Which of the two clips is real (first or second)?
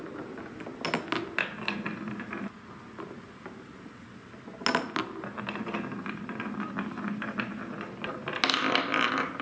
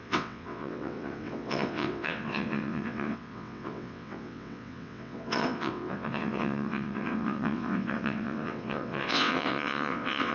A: first